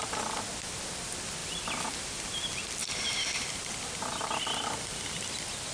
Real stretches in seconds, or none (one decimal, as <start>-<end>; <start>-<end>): 0.0-1.4; 2.4-2.8; 4.2-5.7